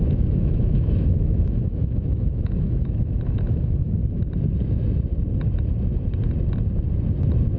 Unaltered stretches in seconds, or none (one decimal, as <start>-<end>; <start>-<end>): 4.0-7.6